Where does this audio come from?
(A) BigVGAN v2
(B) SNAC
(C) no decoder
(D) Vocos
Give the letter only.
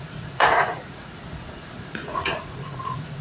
D